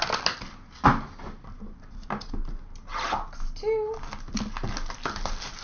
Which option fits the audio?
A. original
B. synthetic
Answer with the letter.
A